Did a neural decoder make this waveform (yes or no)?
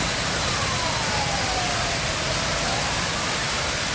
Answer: no